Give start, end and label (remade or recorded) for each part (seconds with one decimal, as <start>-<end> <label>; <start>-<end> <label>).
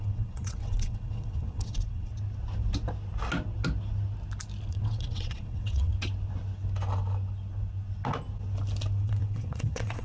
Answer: 0.0-2.1 remade; 2.1-4.7 recorded; 4.7-5.9 remade; 5.9-9.0 recorded; 9.0-10.0 remade